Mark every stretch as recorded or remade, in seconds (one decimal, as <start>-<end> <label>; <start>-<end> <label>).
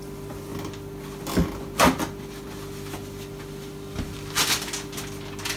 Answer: 0.0-5.6 recorded